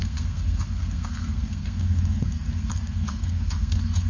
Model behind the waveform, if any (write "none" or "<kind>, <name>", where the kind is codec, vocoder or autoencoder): codec, SNAC